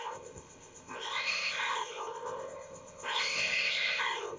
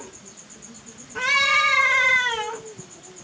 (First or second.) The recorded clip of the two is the second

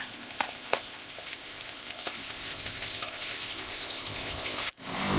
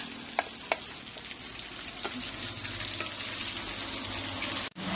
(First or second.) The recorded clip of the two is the second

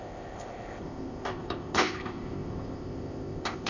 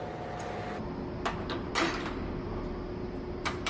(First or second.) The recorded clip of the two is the second